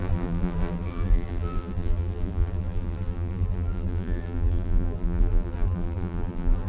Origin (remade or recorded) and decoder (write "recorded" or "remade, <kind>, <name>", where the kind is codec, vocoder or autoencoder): remade, vocoder, BigVGAN v2